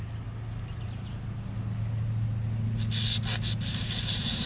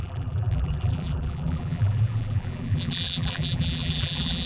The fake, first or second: second